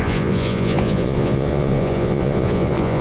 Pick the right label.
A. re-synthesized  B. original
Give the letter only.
A